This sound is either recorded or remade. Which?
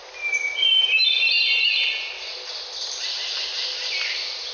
recorded